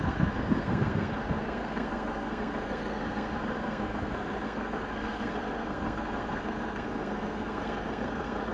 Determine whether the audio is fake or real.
fake